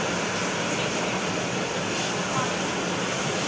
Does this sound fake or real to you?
real